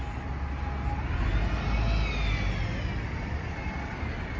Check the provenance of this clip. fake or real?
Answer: real